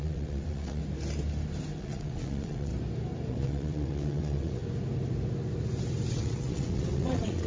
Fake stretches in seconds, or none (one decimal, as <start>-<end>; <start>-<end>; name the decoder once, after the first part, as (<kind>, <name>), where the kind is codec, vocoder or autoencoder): 0.0-0.8 (vocoder, WaveNeXt); 1.8-2.7; 3.3-4.6; 6.1-7.5